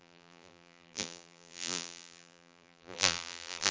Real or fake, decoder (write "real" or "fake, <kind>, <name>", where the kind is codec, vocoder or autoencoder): fake, vocoder, BigVGAN v2